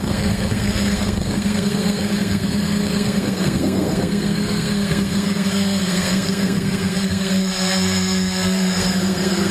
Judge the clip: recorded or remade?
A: remade